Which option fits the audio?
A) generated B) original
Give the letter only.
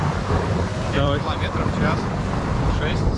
A